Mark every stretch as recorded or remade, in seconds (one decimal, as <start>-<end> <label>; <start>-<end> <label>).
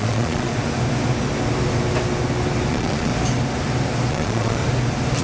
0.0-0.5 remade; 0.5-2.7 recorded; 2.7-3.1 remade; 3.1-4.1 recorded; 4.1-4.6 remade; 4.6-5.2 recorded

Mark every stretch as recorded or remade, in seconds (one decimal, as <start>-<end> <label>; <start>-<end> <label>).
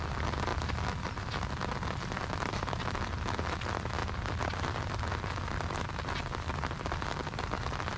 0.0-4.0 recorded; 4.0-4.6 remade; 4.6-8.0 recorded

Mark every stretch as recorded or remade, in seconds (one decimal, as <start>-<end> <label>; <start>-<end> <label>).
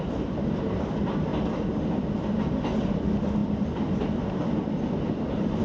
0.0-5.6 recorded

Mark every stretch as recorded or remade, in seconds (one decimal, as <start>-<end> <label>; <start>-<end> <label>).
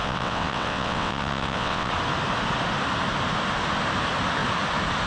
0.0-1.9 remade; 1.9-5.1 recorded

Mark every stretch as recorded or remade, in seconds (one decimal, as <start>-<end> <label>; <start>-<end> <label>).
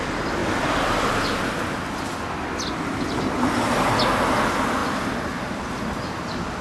0.0-0.4 recorded; 0.4-1.5 remade; 1.5-4.8 recorded; 4.8-5.5 remade; 5.5-6.6 recorded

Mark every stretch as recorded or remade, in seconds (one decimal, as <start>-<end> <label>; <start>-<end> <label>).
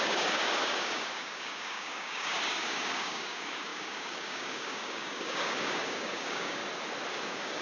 0.0-6.6 remade; 6.6-7.1 recorded; 7.1-7.6 remade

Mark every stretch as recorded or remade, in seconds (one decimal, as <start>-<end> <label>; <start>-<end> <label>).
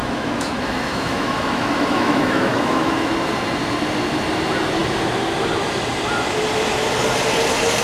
0.0-3.1 remade; 3.1-7.8 recorded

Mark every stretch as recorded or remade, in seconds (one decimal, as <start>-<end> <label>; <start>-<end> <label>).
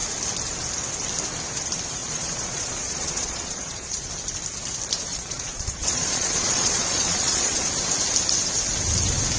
0.0-2.0 recorded; 2.0-4.1 remade; 4.1-5.1 recorded; 5.1-7.6 remade; 7.6-9.4 recorded